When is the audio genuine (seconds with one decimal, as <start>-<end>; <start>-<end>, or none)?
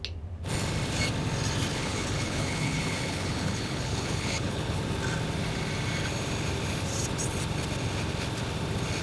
0.0-1.7; 4.8-9.0